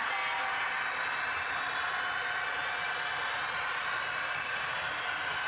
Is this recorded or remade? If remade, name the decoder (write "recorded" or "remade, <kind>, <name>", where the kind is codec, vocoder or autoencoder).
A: recorded